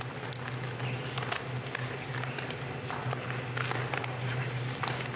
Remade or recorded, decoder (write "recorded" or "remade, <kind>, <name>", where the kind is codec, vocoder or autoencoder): recorded